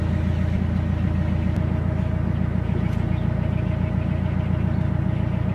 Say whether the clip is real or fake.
real